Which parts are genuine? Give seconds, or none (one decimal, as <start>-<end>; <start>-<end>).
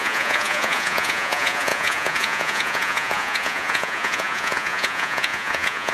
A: none